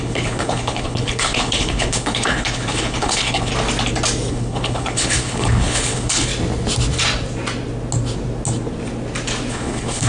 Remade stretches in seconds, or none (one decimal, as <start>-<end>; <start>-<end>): 0.0-3.5; 4.3-6.3; 9.5-10.1